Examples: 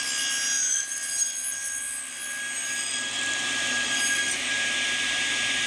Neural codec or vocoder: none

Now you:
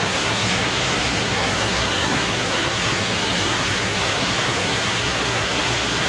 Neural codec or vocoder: codec, SNAC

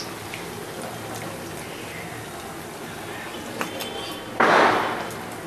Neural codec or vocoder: none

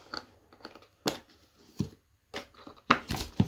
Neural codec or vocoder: none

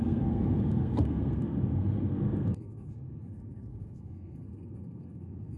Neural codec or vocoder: codec, SNAC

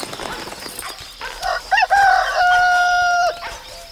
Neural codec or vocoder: none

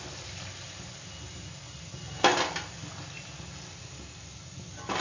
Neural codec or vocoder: none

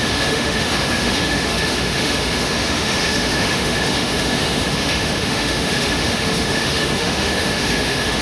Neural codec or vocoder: autoencoder, DAC-VAE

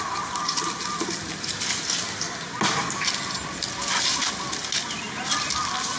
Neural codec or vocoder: none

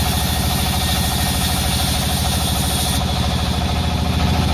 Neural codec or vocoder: none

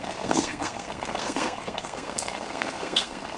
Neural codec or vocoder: codec, SNAC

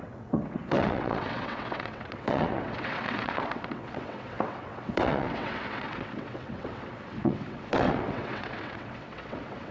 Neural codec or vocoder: vocoder, WaveNeXt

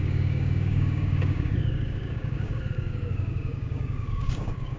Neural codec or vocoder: codec, DAC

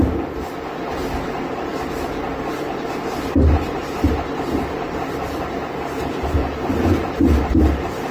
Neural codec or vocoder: vocoder, BigVGAN v2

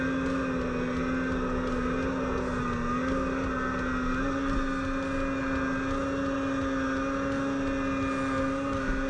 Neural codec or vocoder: none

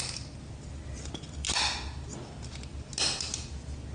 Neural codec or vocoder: none